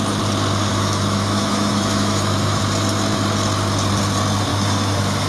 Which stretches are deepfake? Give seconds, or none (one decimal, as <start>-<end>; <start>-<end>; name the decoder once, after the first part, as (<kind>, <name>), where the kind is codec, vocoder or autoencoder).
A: 0.7-2.6 (autoencoder, DAC-VAE); 4.5-5.3